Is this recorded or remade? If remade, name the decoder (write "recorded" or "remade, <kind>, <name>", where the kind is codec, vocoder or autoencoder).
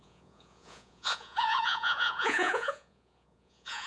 remade, vocoder, Vocos